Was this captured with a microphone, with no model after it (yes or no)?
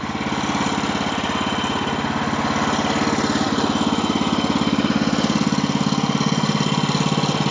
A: yes